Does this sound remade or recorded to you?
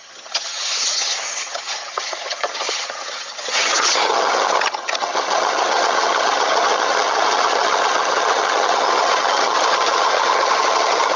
remade